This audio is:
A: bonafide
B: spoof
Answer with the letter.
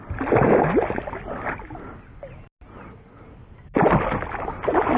A